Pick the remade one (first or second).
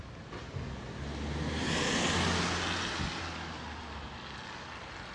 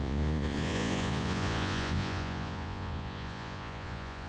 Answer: second